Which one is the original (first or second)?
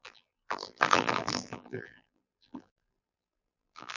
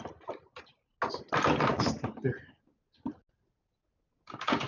second